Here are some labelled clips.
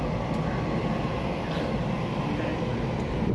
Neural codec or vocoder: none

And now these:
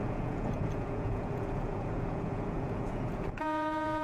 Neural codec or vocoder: vocoder, Vocos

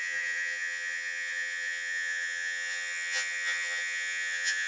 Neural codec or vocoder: vocoder, HiFi-GAN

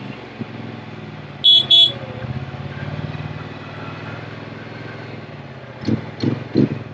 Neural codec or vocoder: none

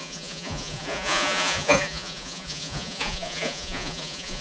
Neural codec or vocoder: vocoder, Vocos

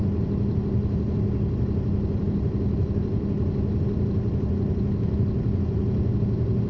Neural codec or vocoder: none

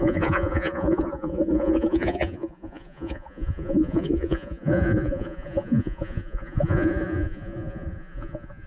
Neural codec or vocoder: vocoder, Vocos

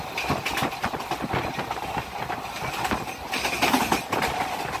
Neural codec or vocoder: none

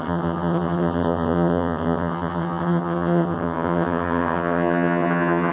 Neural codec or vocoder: vocoder, HiFi-GAN